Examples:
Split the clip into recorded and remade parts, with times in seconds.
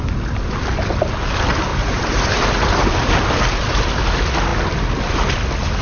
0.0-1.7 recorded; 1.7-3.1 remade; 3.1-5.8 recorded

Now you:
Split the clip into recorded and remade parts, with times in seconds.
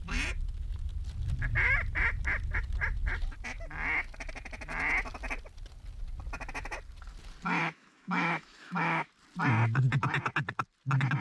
0.0-7.6 recorded; 7.6-9.1 remade; 9.1-11.2 recorded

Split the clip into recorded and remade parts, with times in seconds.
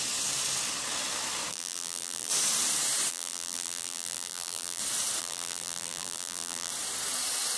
0.0-1.5 recorded; 1.5-2.3 remade; 2.3-3.1 recorded; 3.1-4.8 remade; 4.8-5.2 recorded; 5.2-6.7 remade; 6.7-7.6 recorded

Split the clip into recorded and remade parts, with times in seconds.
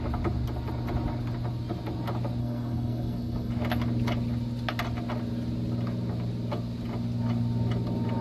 0.0-2.4 recorded; 2.4-3.5 remade; 3.5-8.2 recorded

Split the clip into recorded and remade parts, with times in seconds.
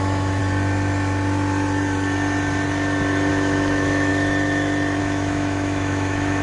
0.0-0.4 remade; 0.4-3.3 recorded; 3.3-4.1 remade; 4.1-5.0 recorded; 5.0-6.4 remade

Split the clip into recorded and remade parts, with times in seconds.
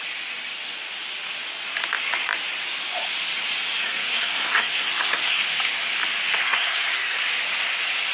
0.0-3.8 recorded; 3.8-5.4 remade; 5.4-6.4 recorded; 6.4-7.2 remade; 7.2-8.1 recorded